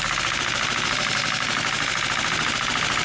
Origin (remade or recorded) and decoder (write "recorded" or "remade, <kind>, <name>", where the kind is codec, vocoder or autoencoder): recorded